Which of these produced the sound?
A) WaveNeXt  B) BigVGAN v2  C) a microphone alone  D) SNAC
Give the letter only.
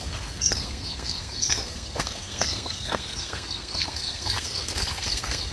D